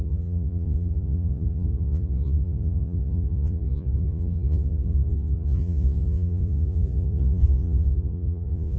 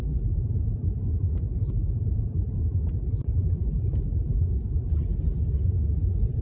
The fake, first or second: first